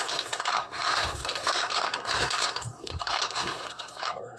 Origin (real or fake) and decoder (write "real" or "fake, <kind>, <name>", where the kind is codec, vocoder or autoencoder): fake, codec, SNAC